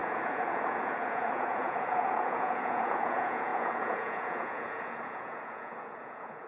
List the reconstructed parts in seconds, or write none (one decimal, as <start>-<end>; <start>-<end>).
0.0-6.5